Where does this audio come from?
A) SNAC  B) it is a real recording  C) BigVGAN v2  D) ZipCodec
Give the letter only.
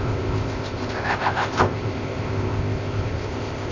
D